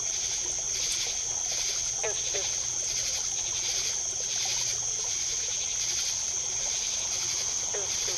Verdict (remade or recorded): recorded